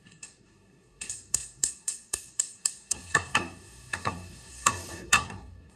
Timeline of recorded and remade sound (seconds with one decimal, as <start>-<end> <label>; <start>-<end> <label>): 0.0-5.8 remade